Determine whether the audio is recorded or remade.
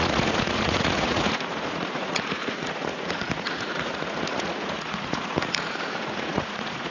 remade